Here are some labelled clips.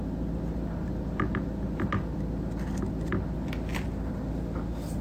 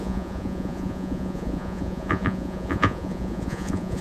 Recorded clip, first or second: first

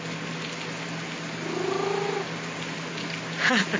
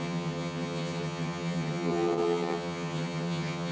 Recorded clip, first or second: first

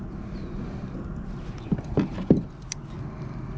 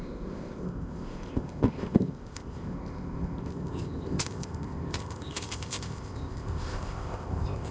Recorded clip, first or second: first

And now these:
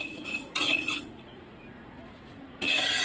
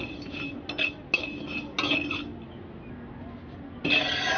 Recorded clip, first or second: second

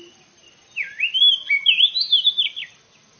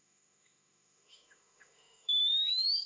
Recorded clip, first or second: first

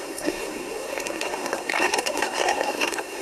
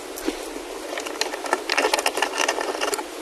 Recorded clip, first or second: second